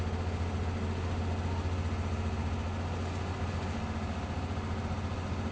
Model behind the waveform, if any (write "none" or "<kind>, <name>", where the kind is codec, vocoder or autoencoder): none